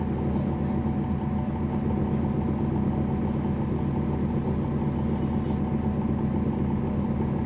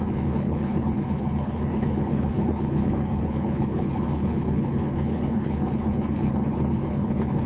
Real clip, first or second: first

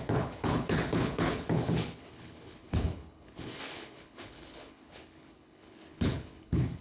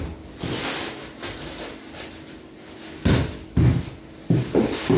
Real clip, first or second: second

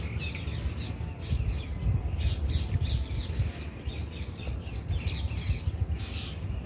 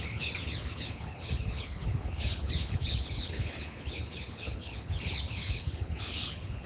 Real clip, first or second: first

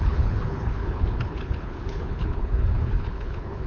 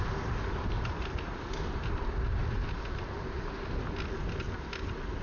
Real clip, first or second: second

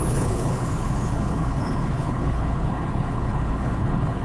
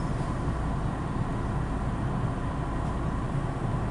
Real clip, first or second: second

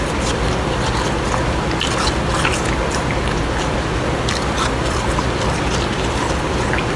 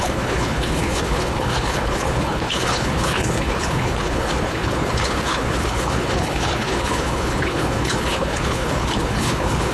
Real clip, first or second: first